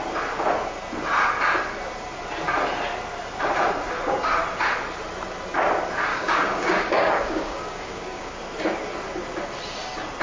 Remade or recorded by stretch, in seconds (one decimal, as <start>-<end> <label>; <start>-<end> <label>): 0.0-6.1 recorded; 6.1-8.4 remade; 8.4-10.2 recorded